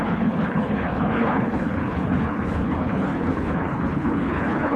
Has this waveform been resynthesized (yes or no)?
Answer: yes